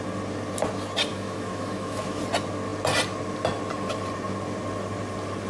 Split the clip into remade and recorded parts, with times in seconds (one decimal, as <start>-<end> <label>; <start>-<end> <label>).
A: 0.0-1.1 recorded; 1.1-2.2 remade; 2.2-5.5 recorded